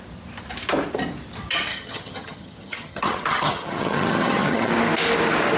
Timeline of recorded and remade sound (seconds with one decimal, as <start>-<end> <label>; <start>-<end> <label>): 0.0-1.7 recorded; 1.7-4.7 remade; 4.7-5.6 recorded